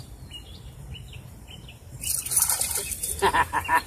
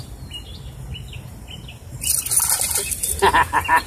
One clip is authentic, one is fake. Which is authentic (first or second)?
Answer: second